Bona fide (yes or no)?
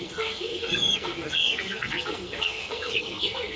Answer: no